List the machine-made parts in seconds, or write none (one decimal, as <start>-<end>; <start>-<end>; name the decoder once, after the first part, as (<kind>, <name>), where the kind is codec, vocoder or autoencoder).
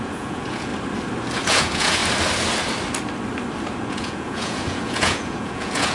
0.0-0.7 (vocoder, Vocos); 1.5-2.0; 3.9-5.9